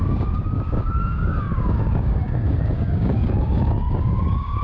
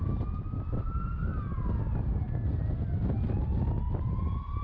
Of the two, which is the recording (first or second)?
second